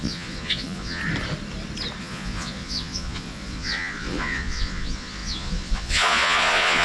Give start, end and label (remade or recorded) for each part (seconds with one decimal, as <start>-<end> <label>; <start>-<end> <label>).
0.0-1.0 remade; 1.0-2.0 recorded; 2.0-6.8 remade